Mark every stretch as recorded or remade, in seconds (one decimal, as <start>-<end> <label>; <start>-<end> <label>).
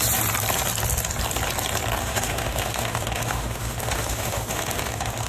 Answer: 0.0-2.0 recorded; 2.0-5.3 remade